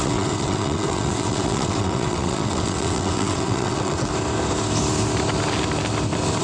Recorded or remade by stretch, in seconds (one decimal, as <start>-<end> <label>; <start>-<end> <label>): 0.0-4.1 remade; 4.1-6.4 recorded